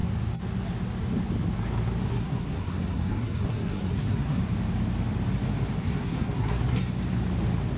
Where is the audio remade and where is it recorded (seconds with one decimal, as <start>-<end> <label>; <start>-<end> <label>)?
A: 0.0-2.1 recorded; 2.1-4.4 remade; 4.4-5.8 recorded; 5.8-6.8 remade; 6.8-7.8 recorded